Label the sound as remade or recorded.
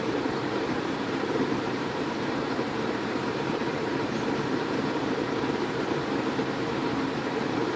remade